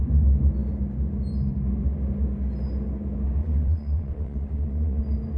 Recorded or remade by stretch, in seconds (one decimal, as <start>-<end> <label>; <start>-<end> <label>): 0.0-3.4 recorded; 3.4-5.0 remade; 5.0-5.4 recorded